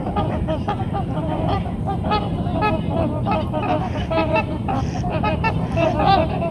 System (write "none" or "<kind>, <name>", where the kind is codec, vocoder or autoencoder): vocoder, BigVGAN v2